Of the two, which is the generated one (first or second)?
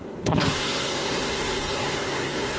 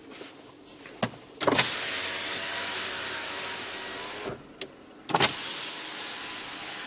first